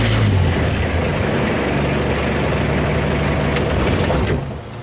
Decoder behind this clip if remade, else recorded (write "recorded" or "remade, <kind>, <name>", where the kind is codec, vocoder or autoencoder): recorded